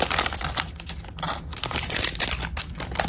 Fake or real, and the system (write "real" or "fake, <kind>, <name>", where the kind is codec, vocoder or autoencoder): real